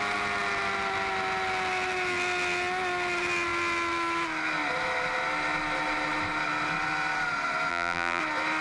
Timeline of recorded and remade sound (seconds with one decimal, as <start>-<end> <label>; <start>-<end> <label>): 0.0-7.7 recorded; 7.7-8.2 remade; 8.2-8.6 recorded